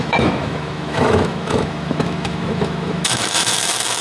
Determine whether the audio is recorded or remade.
remade